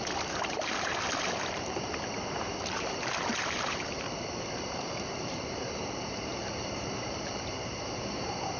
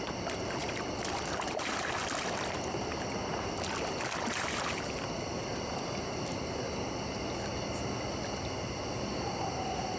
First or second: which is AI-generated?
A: first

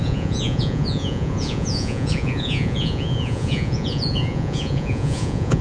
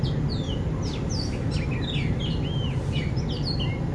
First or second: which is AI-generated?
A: first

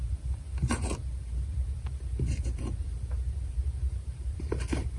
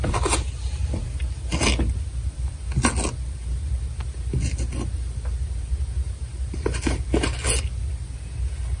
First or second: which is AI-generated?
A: first